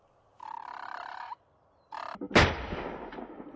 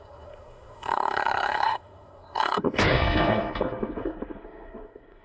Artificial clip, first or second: second